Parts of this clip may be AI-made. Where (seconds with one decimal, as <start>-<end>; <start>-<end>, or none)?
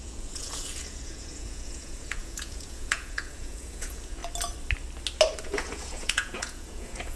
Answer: 0.0-4.2; 5.4-7.2